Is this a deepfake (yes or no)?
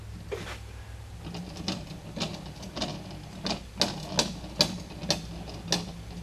no